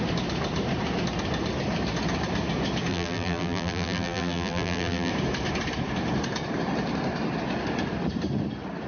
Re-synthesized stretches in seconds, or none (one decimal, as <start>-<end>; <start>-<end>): 2.9-5.1